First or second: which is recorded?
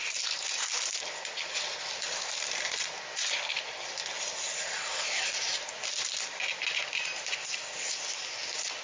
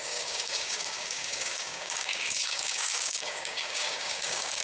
first